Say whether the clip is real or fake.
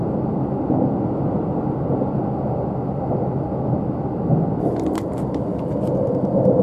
real